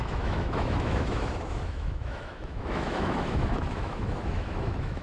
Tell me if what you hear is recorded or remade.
remade